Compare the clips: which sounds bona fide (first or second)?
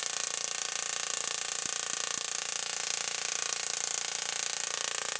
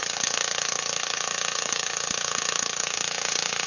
first